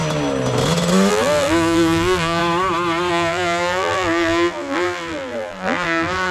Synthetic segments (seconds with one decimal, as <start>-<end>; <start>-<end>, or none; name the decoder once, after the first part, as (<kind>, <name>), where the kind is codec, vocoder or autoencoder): 1.1-2.4 (vocoder, BigVGAN v2); 3.1-6.3